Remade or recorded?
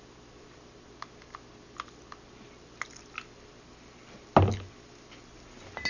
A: recorded